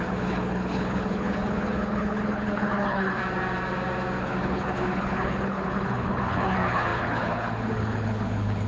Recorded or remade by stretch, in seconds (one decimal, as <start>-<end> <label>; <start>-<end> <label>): 0.0-3.2 remade; 3.2-4.2 recorded; 4.2-8.7 remade